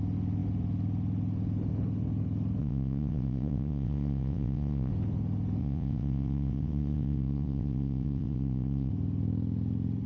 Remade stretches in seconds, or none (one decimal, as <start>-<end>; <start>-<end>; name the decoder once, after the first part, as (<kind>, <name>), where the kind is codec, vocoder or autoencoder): 2.6-4.9 (vocoder, WaveNeXt); 5.6-8.9